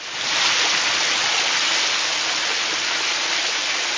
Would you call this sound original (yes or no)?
yes